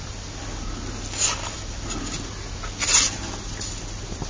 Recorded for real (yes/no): yes